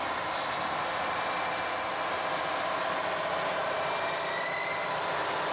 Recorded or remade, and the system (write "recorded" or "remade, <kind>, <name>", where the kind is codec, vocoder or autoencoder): recorded